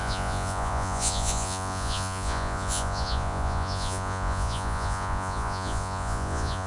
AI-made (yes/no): yes